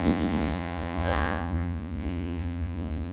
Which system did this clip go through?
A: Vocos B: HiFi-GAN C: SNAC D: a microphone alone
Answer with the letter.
A